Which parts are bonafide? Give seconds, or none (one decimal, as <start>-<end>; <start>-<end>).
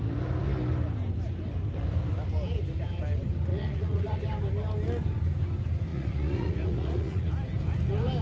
0.0-3.5; 4.2-5.9; 7.3-8.2